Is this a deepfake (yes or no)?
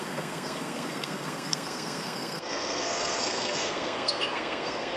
yes